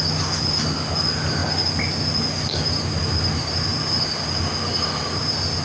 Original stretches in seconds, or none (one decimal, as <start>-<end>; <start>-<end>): 0.0-5.6